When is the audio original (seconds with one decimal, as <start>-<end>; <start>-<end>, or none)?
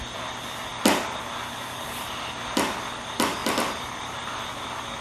0.0-5.0